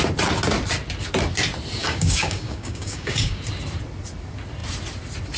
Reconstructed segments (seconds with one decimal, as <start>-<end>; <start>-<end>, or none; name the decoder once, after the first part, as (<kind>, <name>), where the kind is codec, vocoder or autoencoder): 1.8-3.4 (codec, DAC)